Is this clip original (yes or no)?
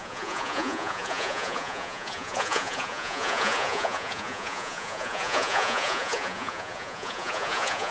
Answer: no